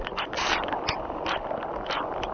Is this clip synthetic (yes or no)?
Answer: no